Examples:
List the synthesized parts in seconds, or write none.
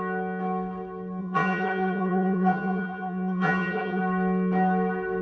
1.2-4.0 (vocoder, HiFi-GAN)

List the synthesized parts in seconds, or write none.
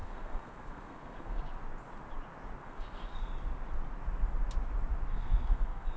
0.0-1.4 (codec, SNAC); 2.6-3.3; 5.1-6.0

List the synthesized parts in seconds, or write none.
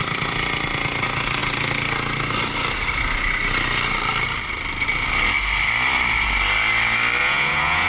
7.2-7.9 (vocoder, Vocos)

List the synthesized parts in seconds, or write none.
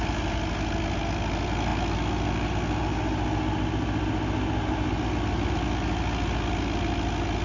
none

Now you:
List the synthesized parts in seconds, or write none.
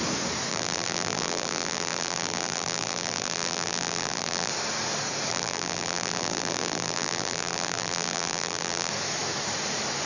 0.5-4.5 (vocoder, BigVGAN v2); 5.3-8.9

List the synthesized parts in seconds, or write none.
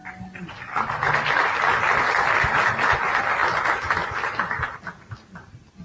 none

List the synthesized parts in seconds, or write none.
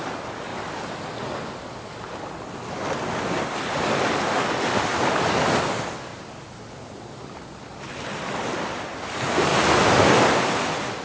0.5-4.4 (vocoder, BigVGAN v2)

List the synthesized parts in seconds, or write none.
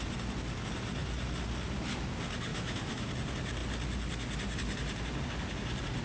2.5-3.1 (autoencoder, DAC-VAE)